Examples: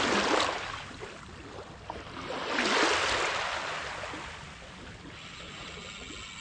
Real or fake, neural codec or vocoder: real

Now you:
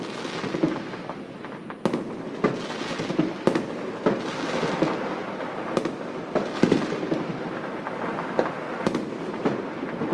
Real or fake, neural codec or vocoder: real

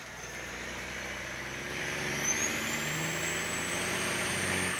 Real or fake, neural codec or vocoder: fake, vocoder, BigVGAN v2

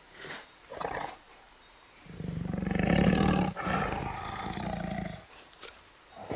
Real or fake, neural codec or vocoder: fake, vocoder, BigVGAN v2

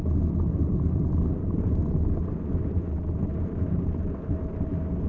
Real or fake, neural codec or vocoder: real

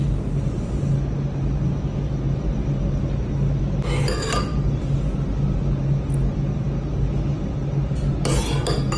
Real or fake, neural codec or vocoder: real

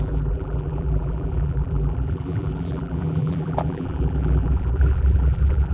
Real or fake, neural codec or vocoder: fake, vocoder, BigVGAN v2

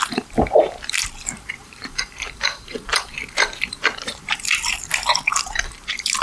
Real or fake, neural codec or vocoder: fake, vocoder, BigVGAN v2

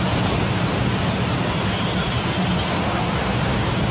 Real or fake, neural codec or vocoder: real